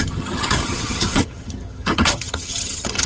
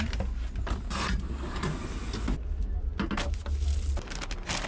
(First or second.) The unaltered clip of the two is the second